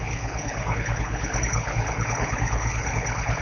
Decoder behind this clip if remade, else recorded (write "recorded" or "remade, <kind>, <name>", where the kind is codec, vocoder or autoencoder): remade, codec, HILCodec